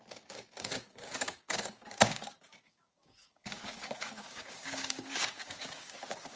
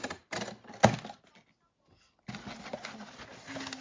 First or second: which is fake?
first